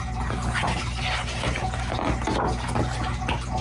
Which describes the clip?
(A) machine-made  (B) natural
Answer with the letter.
B